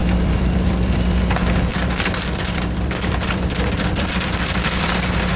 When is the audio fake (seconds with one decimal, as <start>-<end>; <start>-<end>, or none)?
0.0-1.2; 1.7-4.9